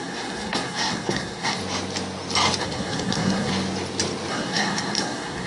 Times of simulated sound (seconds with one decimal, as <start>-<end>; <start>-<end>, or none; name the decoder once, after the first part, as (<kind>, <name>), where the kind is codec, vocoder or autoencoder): 0.0-1.6 (codec, SNAC); 2.6-3.5; 4.3-5.5